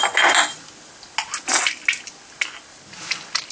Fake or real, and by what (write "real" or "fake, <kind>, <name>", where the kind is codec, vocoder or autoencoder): real